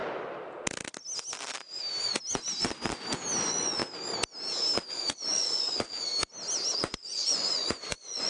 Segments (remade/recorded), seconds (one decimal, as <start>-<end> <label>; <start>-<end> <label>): 0.0-3.4 recorded; 3.4-3.8 remade; 3.8-4.9 recorded; 4.9-6.1 remade; 6.1-6.7 recorded; 6.7-8.3 remade